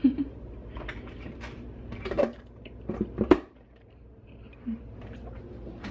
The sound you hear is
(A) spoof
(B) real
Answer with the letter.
A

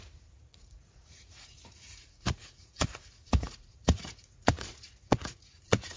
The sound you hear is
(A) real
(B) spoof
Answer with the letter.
B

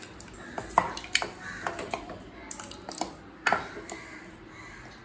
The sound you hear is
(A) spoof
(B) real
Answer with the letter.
B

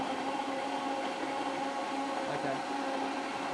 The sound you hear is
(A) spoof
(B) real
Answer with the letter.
B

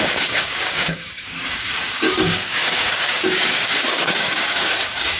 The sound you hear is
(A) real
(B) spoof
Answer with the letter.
B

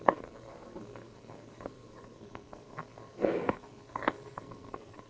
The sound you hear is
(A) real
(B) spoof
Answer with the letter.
B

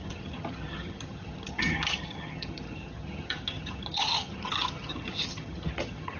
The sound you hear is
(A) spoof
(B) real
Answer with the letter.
A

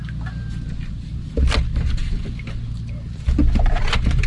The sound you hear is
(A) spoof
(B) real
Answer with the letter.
B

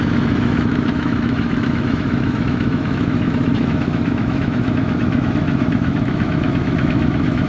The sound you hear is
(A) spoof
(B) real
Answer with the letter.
A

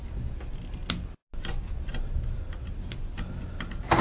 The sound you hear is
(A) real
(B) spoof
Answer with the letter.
A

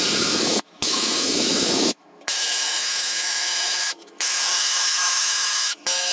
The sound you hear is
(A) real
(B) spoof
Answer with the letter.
B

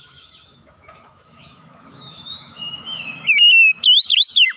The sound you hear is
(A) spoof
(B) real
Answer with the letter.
A